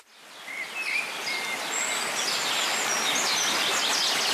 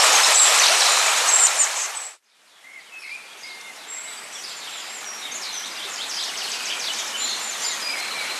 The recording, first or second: first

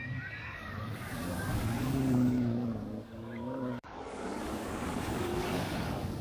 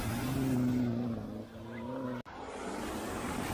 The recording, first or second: second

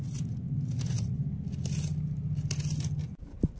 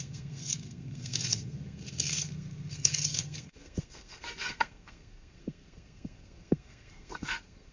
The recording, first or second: first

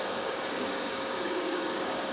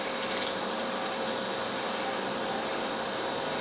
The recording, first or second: second